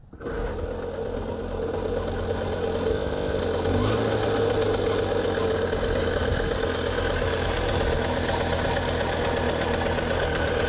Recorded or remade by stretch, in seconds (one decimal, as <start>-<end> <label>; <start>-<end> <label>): 0.0-2.9 recorded; 2.9-3.4 remade; 3.4-10.7 recorded